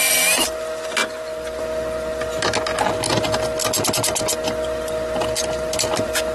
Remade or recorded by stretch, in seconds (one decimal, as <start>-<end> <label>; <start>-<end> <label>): 0.0-1.0 recorded; 1.0-1.6 remade; 1.6-6.3 recorded

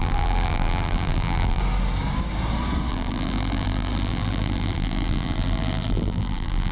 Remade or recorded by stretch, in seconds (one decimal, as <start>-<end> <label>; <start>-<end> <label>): 0.0-1.6 remade; 1.6-2.9 recorded; 2.9-6.7 remade

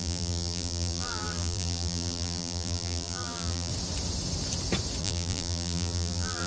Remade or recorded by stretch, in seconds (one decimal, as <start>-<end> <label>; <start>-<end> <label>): 0.0-3.7 remade; 3.7-5.0 recorded; 5.0-6.5 remade